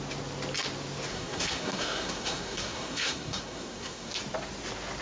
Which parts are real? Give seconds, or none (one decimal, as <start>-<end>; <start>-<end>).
0.0-1.1; 4.1-5.0